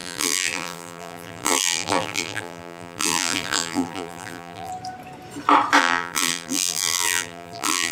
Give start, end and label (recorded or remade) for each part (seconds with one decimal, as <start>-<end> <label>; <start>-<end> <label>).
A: 0.0-4.7 remade; 4.7-5.8 recorded; 5.8-7.9 remade